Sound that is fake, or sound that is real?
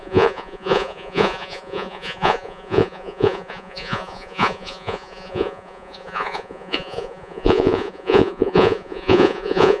fake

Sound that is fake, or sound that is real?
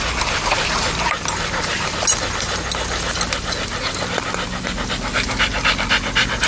real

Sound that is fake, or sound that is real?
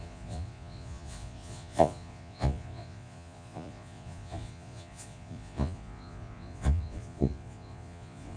fake